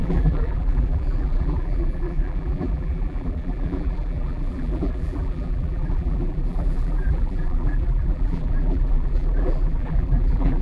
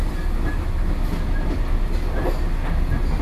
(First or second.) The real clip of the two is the second